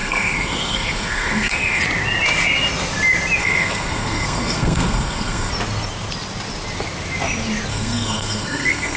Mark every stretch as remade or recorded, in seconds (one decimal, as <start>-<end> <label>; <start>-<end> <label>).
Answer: 0.0-1.8 remade; 1.8-3.4 recorded; 3.4-5.5 remade; 5.5-7.7 recorded; 7.7-9.0 remade